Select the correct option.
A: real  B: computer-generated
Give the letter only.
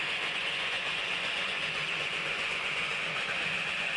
B